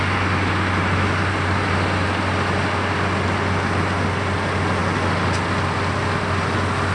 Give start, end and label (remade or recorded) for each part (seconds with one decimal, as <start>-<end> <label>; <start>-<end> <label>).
0.0-6.9 recorded